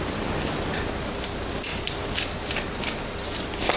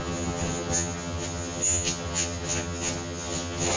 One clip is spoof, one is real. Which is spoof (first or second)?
second